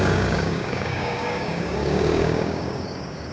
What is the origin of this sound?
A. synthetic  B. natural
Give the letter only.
A